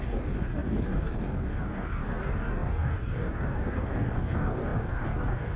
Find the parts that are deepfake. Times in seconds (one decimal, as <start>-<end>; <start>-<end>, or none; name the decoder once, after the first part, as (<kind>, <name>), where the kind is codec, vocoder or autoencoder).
0.0-5.6 (codec, DAC)